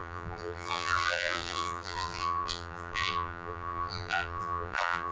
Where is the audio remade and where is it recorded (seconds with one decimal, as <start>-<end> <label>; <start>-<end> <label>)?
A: 0.0-5.1 remade